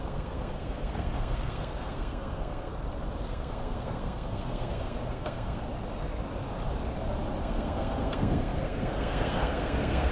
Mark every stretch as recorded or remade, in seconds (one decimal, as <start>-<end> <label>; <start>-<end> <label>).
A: 0.0-2.7 remade; 2.7-3.3 recorded; 3.3-5.7 remade; 5.7-7.4 recorded; 7.4-10.1 remade